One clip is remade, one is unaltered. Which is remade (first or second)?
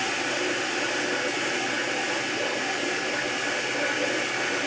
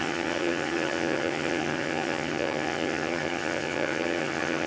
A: second